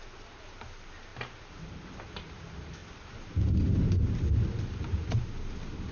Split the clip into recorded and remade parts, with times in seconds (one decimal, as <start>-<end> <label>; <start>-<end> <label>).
0.0-5.9 recorded